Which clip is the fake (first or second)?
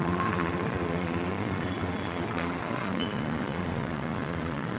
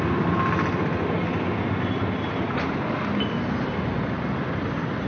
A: first